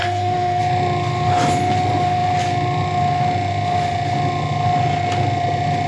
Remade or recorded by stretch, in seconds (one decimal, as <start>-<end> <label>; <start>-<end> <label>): 0.0-0.6 remade; 0.6-5.9 recorded